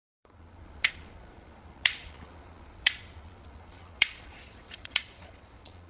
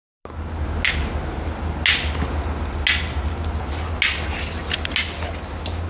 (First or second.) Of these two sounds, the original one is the second